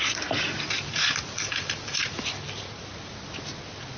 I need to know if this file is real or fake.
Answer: real